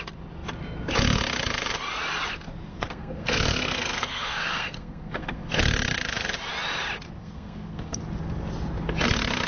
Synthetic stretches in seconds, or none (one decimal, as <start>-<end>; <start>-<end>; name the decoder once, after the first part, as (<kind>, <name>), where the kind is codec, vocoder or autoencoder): 2.7-5.6 (codec, SNAC); 7.2-8.0